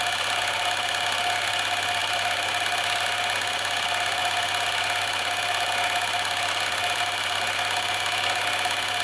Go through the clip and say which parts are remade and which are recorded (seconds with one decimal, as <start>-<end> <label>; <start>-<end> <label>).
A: 0.0-9.0 recorded